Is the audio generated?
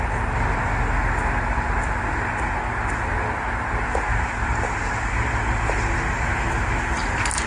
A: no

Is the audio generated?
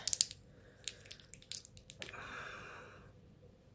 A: no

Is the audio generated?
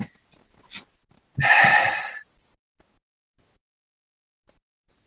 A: no